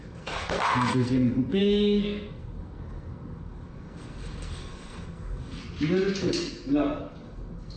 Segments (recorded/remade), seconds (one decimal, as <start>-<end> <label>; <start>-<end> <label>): 0.0-5.6 remade; 5.6-6.2 recorded; 6.2-7.8 remade